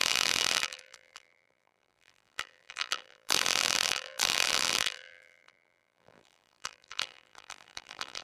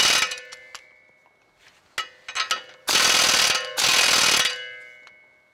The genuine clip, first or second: second